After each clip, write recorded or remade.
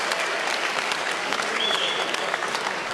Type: remade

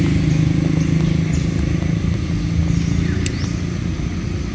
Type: recorded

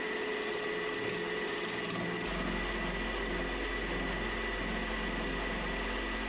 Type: recorded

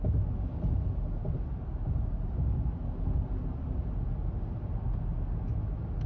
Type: recorded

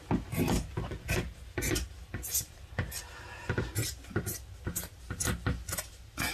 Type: recorded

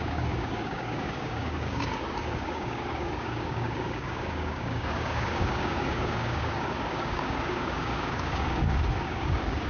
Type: remade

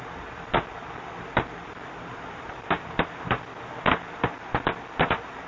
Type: recorded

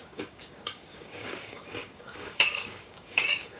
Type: remade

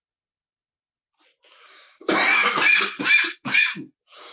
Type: recorded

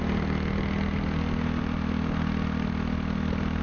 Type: recorded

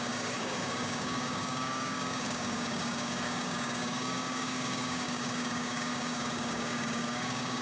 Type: remade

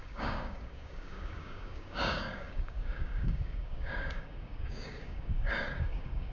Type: remade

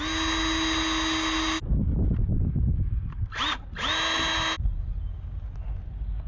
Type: recorded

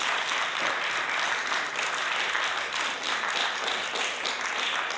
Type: recorded